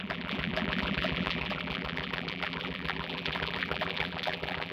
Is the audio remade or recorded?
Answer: remade